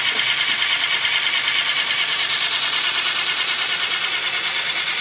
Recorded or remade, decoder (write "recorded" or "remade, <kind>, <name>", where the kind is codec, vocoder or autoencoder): recorded